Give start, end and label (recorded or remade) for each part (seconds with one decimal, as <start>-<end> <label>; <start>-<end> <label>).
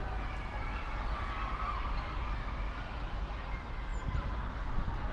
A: 0.0-5.1 recorded